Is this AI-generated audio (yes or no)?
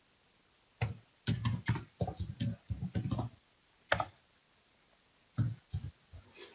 no